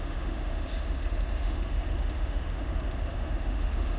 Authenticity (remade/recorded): remade